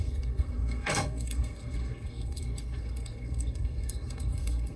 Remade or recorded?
remade